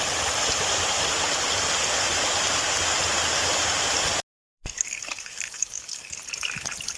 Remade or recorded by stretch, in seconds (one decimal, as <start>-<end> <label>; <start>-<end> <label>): 0.0-4.5 recorded; 4.5-6.2 remade; 6.2-7.0 recorded